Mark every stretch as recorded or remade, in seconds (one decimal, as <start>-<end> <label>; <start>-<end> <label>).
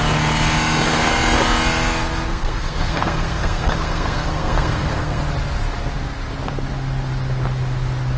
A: 0.0-2.3 recorded; 2.3-5.2 remade; 5.2-8.2 recorded